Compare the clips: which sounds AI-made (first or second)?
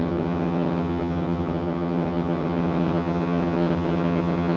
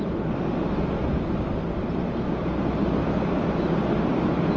first